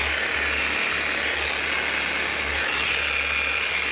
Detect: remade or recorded recorded